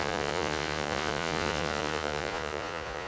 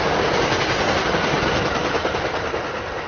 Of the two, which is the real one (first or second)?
second